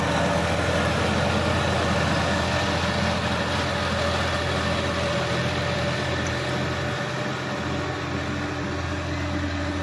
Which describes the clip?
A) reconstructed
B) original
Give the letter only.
B